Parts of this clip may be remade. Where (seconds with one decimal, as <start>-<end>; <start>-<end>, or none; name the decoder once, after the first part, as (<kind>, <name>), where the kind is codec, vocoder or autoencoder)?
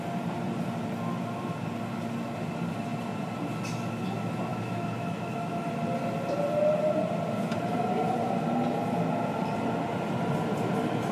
4.5-5.7 (autoencoder, DAC-VAE)